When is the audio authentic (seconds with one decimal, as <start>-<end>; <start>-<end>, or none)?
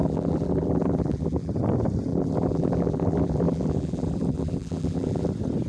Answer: 1.5-2.1; 5.3-5.7